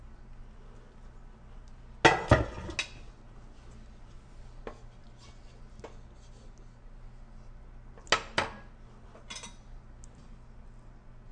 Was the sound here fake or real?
real